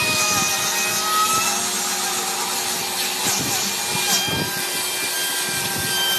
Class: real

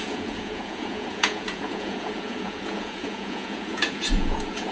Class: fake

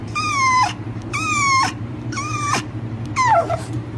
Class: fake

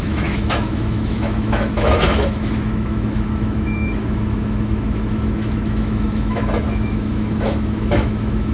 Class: fake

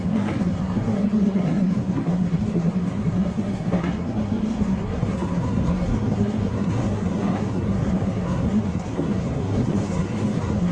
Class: fake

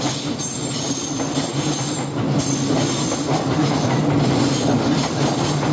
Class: real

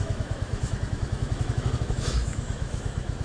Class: fake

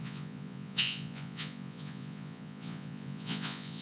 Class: fake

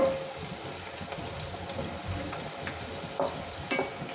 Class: real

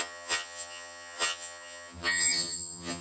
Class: fake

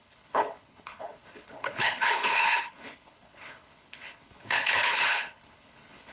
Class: fake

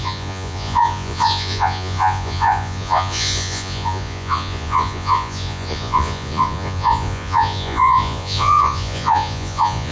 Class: fake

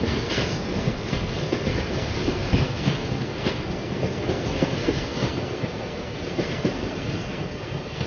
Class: fake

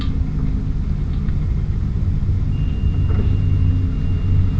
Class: real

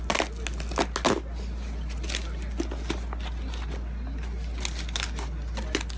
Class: real